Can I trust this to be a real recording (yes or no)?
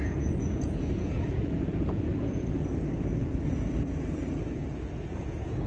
no